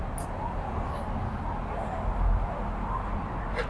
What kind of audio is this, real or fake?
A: real